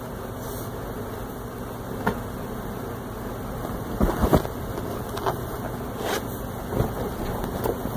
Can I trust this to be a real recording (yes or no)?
yes